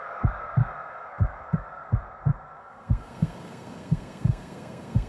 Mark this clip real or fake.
fake